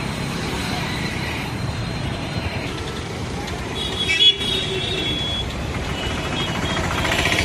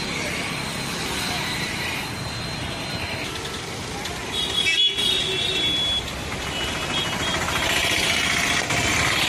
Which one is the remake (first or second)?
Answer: first